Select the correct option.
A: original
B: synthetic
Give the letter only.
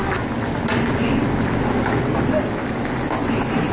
A